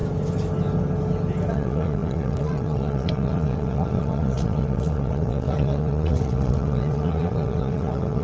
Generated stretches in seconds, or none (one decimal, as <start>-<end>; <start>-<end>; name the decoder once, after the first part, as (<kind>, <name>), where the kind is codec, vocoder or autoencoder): 1.5-8.2 (vocoder, WaveNeXt)